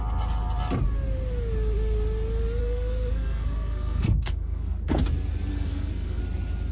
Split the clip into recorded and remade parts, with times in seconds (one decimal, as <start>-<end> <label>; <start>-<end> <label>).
0.0-2.6 recorded; 2.6-5.0 remade; 5.0-5.5 recorded; 5.5-6.2 remade; 6.2-6.7 recorded